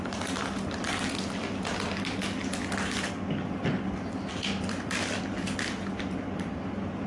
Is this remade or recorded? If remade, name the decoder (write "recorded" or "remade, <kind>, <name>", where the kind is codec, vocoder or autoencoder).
recorded